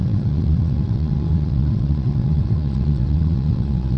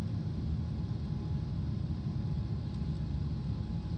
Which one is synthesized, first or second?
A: first